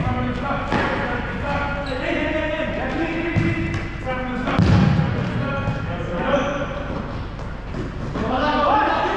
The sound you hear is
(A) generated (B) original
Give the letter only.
B